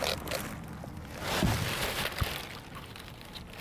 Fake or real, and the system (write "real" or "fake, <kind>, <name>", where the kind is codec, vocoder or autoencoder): real